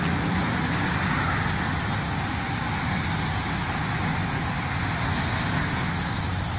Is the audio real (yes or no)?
yes